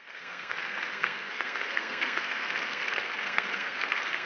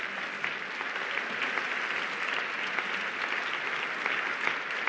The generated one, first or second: first